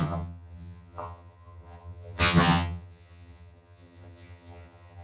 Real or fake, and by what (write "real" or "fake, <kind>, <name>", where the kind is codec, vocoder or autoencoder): fake, vocoder, HiFi-GAN